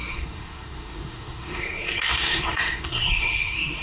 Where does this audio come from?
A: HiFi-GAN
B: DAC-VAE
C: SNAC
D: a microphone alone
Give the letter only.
C